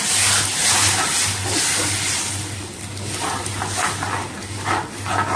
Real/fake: real